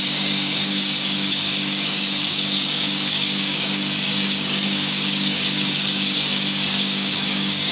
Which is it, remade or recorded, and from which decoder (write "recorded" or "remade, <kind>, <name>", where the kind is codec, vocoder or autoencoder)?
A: remade, codec, DAC